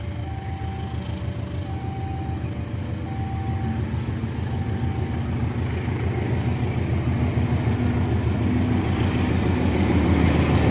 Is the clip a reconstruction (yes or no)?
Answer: no